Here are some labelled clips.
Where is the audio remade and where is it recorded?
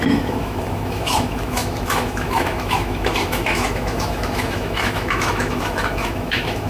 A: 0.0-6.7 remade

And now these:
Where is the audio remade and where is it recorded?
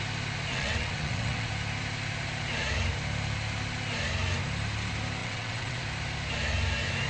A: 0.0-0.5 recorded; 0.5-1.5 remade; 1.5-5.2 recorded; 5.2-5.8 remade; 5.8-7.1 recorded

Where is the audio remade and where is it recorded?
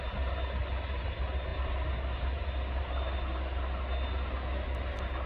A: 0.0-5.3 recorded